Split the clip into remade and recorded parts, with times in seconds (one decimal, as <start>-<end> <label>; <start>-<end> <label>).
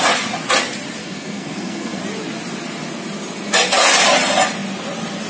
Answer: 0.0-1.0 recorded; 1.0-2.0 remade; 2.0-5.3 recorded